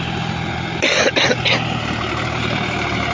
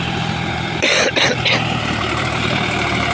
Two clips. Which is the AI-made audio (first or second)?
second